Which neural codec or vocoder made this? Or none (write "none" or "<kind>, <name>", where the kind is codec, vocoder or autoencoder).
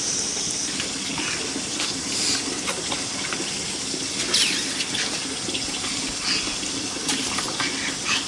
none